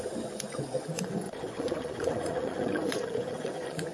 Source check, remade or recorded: remade